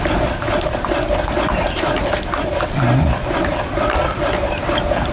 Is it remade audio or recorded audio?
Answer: recorded